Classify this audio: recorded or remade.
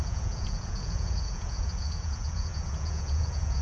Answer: remade